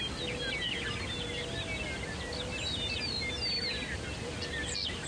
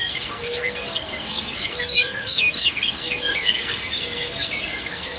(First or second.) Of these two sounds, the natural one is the first